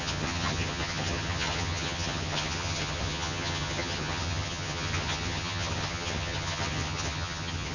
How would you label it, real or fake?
fake